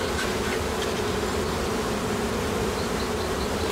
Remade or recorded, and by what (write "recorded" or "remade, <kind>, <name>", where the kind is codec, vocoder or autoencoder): recorded